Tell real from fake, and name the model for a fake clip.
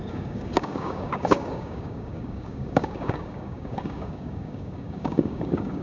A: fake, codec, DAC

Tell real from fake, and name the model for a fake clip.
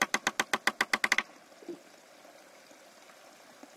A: real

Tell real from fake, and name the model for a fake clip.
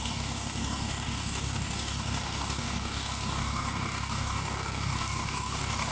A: fake, codec, DAC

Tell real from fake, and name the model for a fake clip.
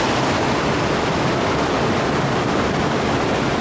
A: real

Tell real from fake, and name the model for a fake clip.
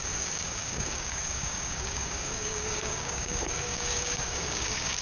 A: fake, codec, DAC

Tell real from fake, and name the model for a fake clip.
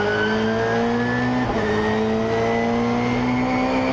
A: real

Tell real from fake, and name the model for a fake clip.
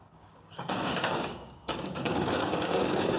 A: fake, codec, DAC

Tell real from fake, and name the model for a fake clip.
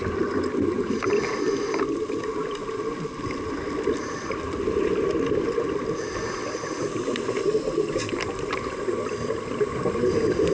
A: real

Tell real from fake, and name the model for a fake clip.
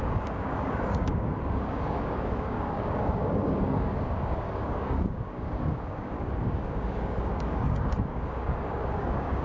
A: fake, codec, DAC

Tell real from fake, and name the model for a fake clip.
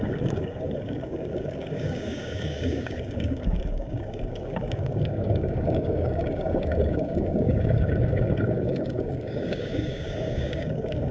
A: fake, codec, DAC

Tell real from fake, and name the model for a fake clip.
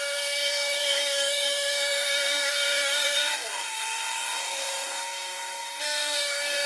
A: fake, codec, DAC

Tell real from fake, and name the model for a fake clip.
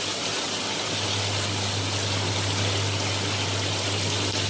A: real